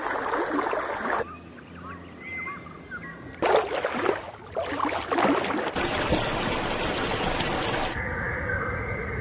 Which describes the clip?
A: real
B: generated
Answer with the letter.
A